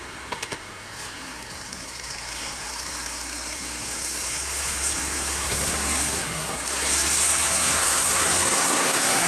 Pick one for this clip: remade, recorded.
remade